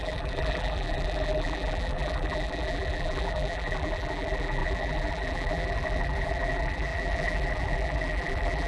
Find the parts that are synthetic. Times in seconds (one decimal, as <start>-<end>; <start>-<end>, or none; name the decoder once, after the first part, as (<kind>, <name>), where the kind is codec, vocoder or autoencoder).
0.0-8.7 (vocoder, BigVGAN v2)